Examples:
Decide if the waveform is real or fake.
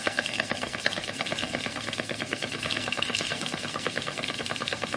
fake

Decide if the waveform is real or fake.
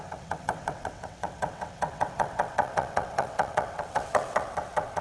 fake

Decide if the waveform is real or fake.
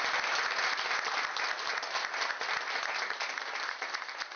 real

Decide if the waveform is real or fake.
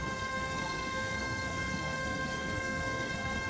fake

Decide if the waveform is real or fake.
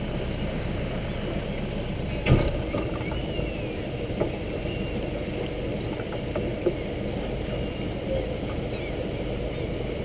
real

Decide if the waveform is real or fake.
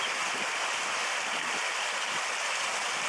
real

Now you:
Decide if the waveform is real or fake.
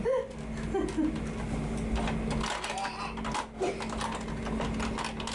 real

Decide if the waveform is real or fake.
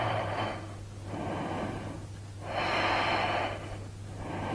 real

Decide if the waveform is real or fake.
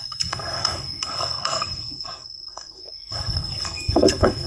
fake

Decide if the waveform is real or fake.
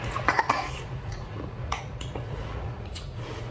fake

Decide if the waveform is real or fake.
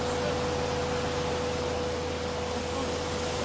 real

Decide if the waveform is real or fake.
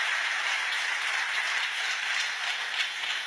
fake